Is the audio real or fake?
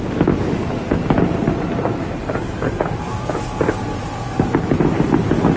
real